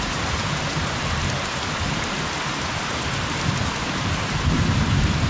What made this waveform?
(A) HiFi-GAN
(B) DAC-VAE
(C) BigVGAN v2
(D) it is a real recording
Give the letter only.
C